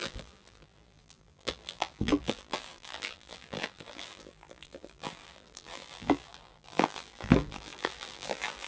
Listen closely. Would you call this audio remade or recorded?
remade